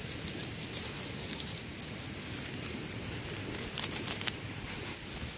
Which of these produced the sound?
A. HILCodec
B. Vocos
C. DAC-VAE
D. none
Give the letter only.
D